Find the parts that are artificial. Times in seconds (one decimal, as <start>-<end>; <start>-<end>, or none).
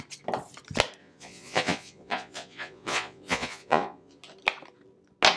1.0-4.2